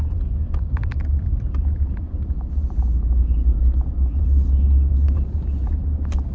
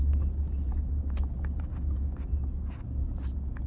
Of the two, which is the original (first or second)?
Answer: second